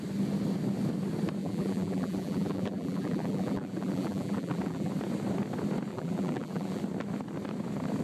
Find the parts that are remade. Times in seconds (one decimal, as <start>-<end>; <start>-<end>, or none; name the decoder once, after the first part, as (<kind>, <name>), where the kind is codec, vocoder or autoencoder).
1.4-4.9 (vocoder, BigVGAN v2); 5.9-6.8